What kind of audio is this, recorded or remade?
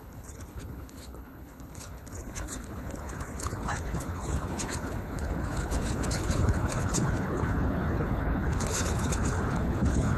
remade